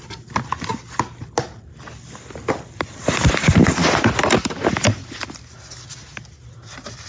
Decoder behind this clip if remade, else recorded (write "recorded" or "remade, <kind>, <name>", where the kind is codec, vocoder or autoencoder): recorded